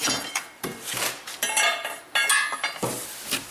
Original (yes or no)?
yes